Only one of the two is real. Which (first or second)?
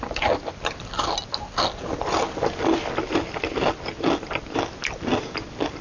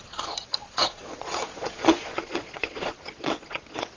first